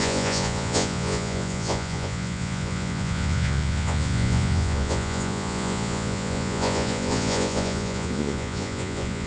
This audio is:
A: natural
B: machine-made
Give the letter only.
B